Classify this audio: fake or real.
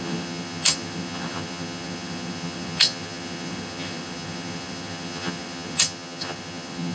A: fake